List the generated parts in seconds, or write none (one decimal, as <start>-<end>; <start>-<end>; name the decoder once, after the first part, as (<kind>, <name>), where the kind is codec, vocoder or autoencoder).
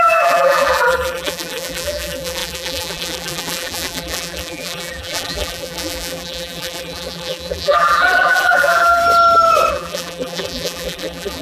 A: 0.0-9.0 (vocoder, BigVGAN v2); 9.7-11.4